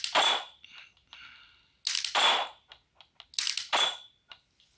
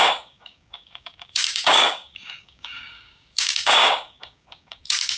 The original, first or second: first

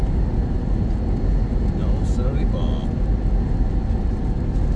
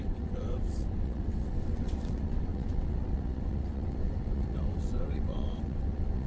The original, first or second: first